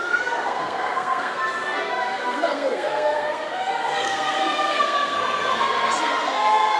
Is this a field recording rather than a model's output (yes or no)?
no